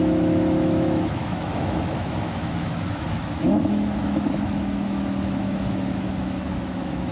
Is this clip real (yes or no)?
no